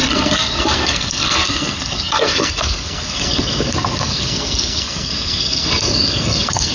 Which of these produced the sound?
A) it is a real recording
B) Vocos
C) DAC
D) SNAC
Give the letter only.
D